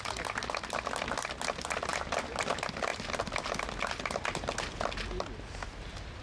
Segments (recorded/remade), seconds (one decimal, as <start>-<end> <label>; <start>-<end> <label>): 0.0-6.2 recorded